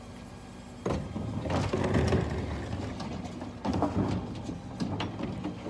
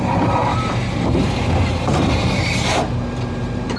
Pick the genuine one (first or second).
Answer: first